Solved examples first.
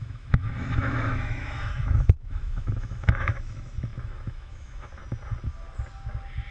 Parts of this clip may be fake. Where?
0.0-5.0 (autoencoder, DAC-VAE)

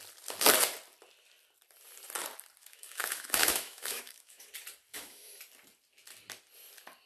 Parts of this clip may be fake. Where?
2.6-4.5 (autoencoder, DAC-VAE); 4.9-5.4